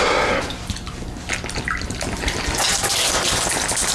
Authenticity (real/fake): real